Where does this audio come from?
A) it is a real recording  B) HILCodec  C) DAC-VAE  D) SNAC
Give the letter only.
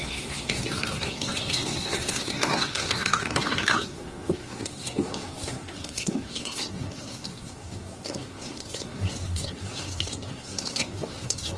D